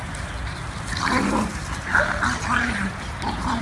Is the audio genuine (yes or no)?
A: yes